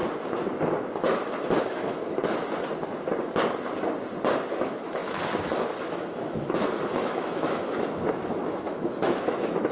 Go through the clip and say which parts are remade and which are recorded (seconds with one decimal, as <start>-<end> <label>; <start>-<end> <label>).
0.0-1.6 recorded; 1.6-2.2 remade; 2.2-4.5 recorded; 4.5-9.7 remade